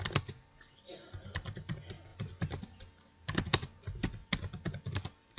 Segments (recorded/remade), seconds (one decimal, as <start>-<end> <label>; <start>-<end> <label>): 0.0-5.4 recorded